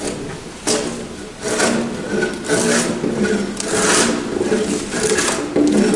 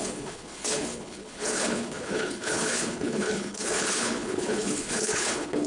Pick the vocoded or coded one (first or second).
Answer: second